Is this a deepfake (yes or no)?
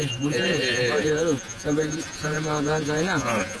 yes